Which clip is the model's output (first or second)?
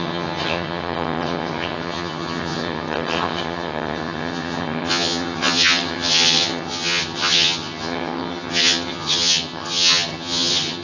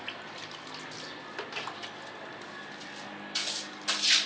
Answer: first